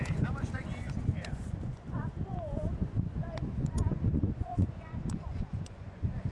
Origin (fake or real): fake